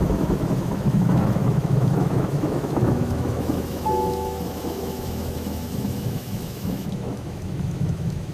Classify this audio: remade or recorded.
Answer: remade